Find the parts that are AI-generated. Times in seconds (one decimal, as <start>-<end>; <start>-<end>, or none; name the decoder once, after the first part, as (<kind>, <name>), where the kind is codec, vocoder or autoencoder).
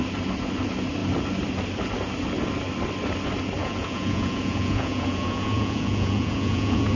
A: 3.6-7.0 (vocoder, Vocos)